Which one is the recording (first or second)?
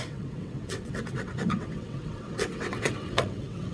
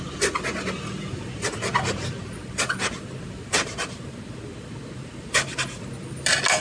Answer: second